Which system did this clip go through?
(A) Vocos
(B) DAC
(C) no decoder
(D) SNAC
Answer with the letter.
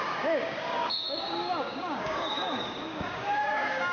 B